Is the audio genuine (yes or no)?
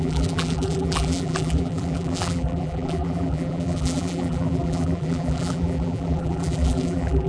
no